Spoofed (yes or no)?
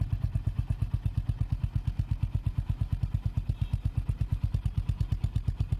no